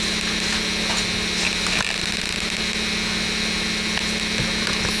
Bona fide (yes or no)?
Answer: yes